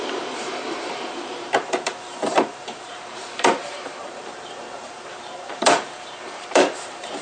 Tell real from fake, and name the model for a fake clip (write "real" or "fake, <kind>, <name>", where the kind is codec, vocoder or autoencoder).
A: fake, vocoder, BigVGAN v2